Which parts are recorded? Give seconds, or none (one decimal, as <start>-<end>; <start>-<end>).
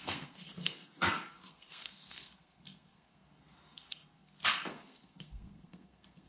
none